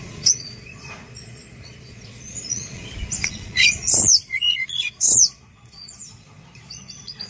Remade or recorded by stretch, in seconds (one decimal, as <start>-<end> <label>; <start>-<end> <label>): 0.0-7.3 remade